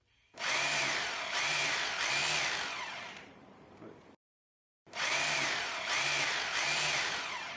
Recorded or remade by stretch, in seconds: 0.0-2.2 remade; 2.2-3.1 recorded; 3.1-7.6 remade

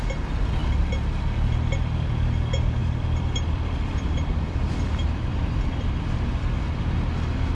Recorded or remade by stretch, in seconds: 0.0-2.8 recorded; 2.8-6.8 remade; 6.8-7.5 recorded